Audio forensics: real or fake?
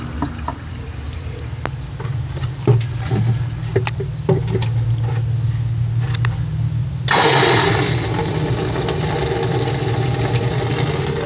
real